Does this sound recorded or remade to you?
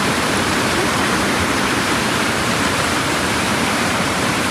remade